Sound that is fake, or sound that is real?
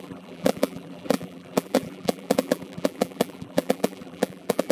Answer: fake